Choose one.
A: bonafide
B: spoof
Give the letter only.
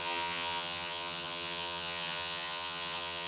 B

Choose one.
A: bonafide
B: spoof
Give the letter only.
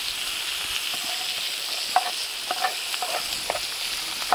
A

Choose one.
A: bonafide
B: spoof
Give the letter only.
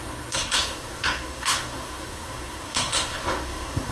B